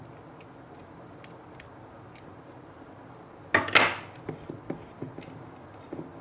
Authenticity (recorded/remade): recorded